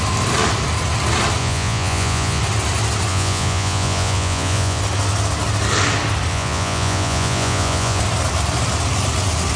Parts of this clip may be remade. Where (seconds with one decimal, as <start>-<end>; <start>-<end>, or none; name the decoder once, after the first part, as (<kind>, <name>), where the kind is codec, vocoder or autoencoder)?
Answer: 1.4-2.4 (vocoder, Vocos); 3.1-4.8; 6.3-8.0